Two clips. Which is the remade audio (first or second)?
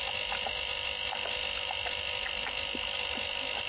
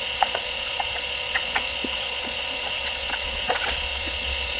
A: second